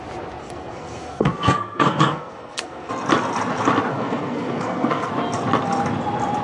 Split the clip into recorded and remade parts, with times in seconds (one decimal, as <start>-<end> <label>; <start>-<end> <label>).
0.0-0.4 recorded; 0.4-2.9 remade; 2.9-3.9 recorded; 3.9-5.1 remade; 5.1-6.4 recorded